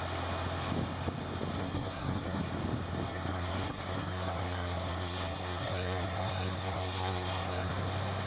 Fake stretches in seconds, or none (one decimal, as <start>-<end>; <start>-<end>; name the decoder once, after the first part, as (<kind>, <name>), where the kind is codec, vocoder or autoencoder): 1.6-2.4 (codec, SNAC); 3.1-7.7